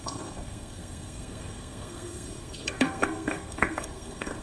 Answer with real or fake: fake